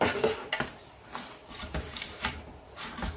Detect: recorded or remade recorded